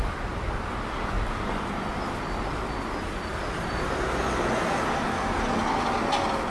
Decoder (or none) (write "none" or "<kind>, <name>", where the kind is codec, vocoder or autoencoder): none